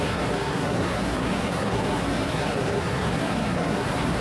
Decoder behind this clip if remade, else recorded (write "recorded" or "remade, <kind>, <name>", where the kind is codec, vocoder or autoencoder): remade, codec, SNAC